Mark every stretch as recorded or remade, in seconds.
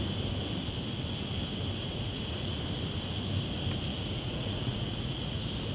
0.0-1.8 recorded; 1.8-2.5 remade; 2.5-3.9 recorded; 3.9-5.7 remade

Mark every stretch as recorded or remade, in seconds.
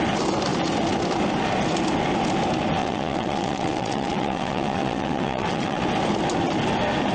0.0-2.8 recorded; 2.8-5.8 remade; 5.8-7.1 recorded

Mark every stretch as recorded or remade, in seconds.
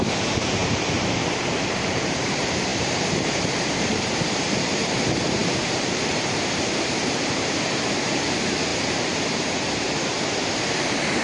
0.0-11.2 remade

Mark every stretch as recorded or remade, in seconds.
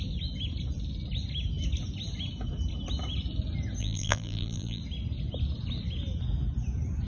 0.0-3.8 recorded; 3.8-4.8 remade; 4.8-7.1 recorded